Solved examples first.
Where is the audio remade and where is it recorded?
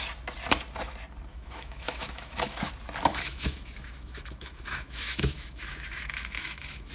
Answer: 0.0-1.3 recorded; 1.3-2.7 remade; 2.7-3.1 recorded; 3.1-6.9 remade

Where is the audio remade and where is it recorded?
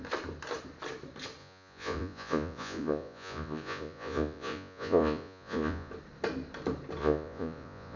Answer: 0.0-1.4 recorded; 1.4-5.9 remade; 5.9-7.0 recorded; 7.0-8.0 remade